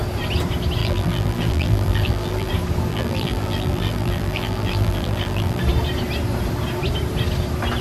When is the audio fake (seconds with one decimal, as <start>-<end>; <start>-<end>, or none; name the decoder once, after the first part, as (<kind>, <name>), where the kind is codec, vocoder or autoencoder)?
0.8-2.5 (vocoder, BigVGAN v2); 2.9-5.6